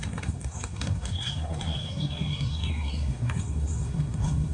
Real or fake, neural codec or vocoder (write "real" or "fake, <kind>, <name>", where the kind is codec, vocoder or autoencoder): fake, codec, SNAC